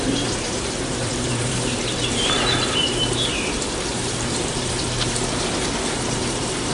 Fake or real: fake